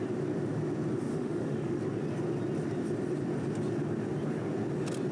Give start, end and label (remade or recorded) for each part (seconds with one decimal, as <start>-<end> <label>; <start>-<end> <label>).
0.0-1.1 recorded; 1.1-1.8 remade; 1.8-5.1 recorded